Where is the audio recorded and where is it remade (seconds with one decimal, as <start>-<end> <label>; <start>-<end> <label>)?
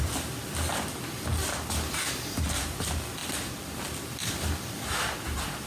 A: 0.0-4.2 recorded; 4.2-4.8 remade; 4.8-5.7 recorded